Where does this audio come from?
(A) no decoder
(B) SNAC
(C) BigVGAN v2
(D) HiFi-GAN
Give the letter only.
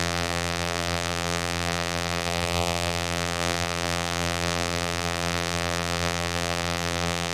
C